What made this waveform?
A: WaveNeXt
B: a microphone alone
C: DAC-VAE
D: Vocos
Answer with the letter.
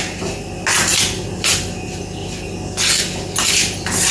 B